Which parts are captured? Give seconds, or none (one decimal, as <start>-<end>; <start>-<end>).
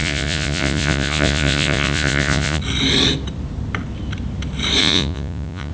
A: 2.6-4.8